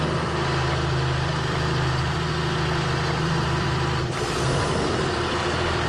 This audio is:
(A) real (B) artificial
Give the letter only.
B